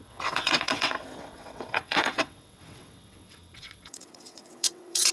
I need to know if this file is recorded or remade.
remade